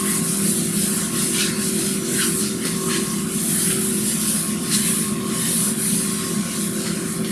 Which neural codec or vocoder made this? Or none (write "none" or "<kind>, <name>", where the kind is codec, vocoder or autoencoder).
none